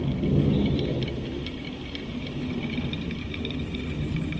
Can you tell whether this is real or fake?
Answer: real